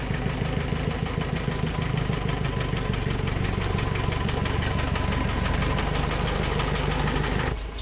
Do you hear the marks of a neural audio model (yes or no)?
no